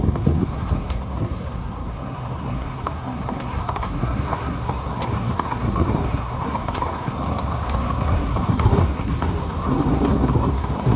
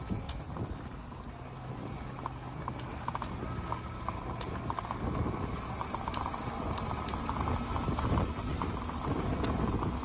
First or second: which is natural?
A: second